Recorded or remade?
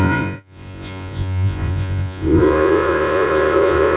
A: remade